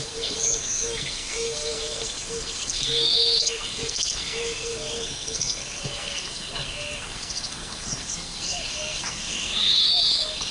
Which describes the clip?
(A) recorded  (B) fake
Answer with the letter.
B